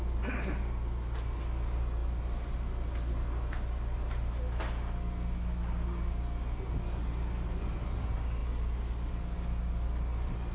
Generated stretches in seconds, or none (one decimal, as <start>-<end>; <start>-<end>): none